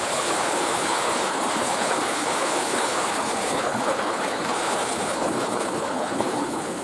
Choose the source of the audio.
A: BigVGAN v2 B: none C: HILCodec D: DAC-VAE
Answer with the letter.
C